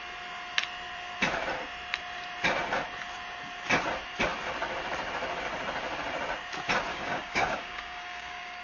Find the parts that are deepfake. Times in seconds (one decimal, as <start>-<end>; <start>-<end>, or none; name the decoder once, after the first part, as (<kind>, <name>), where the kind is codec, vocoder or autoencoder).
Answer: 6.9-8.6 (codec, DAC)